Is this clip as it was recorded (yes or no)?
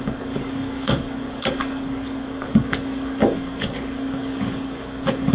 no